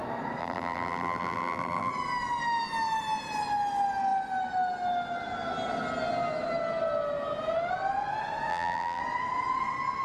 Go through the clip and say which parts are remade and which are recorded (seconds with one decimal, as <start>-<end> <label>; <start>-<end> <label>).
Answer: 0.0-0.4 recorded; 0.4-1.9 remade; 1.9-8.5 recorded; 8.5-9.0 remade; 9.0-10.0 recorded